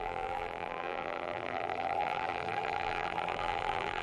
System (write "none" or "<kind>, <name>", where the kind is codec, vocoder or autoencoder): vocoder, BigVGAN v2